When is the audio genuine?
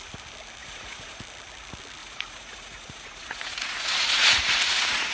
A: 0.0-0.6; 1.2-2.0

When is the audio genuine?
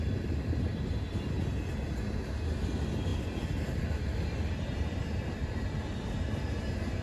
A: 0.0-7.0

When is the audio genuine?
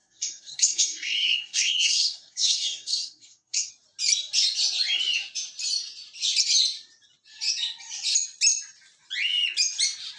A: 3.7-10.2